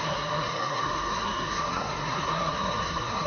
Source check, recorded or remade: remade